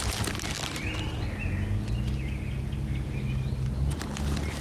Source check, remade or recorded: recorded